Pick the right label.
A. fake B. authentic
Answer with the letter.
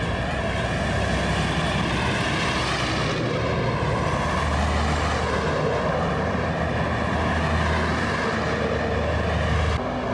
B